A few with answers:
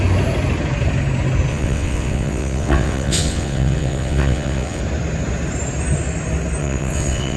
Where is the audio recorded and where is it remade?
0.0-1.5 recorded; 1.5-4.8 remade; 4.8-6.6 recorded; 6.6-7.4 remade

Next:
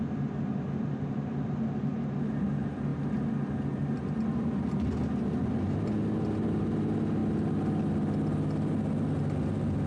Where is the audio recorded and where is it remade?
0.0-9.9 recorded

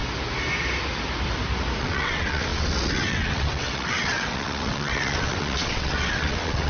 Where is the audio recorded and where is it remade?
0.0-1.8 recorded; 1.8-6.7 remade